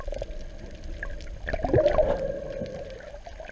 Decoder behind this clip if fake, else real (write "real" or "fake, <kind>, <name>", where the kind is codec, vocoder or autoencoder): real